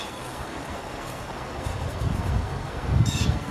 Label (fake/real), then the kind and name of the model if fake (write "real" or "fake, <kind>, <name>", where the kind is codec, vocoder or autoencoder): fake, codec, SNAC